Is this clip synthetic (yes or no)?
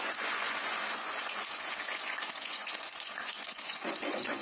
yes